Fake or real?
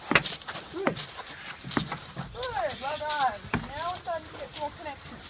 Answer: real